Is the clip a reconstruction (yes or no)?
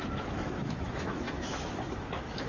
yes